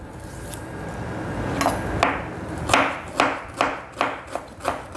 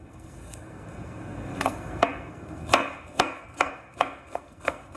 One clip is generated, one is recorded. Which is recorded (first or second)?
first